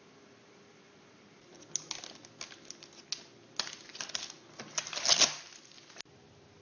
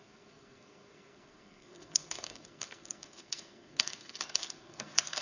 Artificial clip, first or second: second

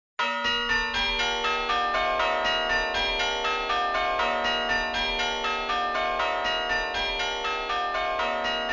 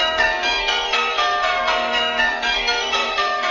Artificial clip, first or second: second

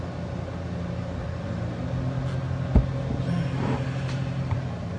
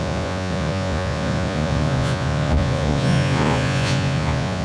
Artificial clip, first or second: second